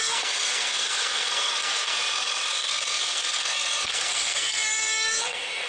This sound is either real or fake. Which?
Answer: fake